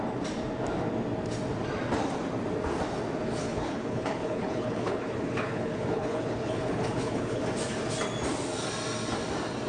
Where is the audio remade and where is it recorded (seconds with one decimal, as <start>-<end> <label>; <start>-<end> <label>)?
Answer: 0.0-3.4 recorded; 3.4-7.4 remade; 7.4-9.7 recorded